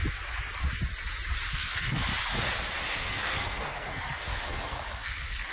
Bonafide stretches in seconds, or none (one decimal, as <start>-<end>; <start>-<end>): 0.0-1.5; 2.0-2.9